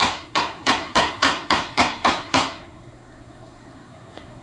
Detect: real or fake fake